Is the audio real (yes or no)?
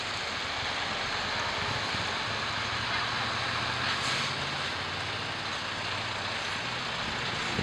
yes